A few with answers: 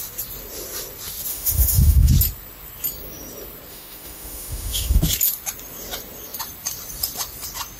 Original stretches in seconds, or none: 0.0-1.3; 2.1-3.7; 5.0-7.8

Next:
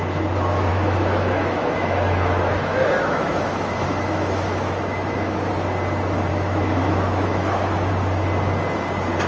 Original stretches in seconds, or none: 0.0-0.7; 5.5-6.3; 7.9-9.3